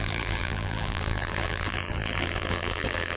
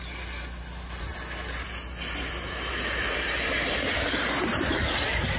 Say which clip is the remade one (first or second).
first